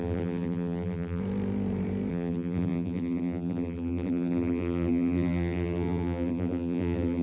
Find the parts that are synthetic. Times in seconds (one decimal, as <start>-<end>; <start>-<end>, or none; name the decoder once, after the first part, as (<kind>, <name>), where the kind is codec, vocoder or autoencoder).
0.0-1.2 (vocoder, BigVGAN v2); 2.1-7.2